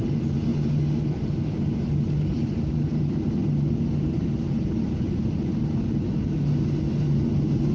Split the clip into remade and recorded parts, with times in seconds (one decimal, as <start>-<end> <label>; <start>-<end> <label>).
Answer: 0.0-7.7 recorded